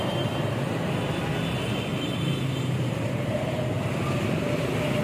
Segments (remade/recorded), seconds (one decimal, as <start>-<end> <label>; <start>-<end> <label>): 0.0-5.0 recorded